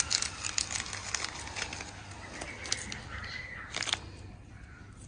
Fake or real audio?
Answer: real